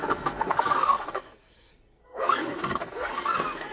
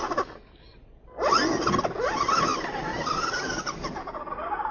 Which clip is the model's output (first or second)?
first